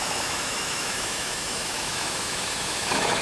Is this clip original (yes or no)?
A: no